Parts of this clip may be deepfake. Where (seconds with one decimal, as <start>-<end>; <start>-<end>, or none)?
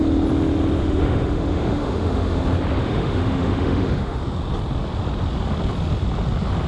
0.8-2.4; 2.8-4.2